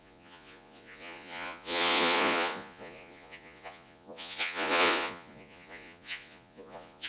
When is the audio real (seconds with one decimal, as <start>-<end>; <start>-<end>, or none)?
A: none